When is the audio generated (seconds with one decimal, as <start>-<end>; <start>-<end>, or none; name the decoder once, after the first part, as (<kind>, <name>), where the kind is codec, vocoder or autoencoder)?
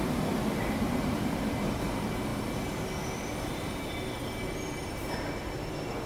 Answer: none